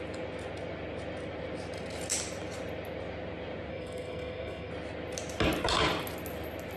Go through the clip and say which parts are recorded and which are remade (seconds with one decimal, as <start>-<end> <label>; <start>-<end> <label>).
0.0-3.7 recorded; 3.7-4.7 remade; 4.7-6.8 recorded